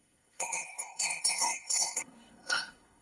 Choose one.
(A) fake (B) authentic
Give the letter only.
A